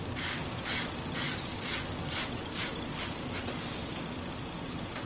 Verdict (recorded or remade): recorded